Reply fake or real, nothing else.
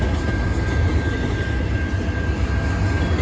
real